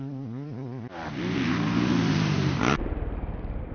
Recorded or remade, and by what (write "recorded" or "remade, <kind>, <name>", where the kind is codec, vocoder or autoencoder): remade, vocoder, BigVGAN v2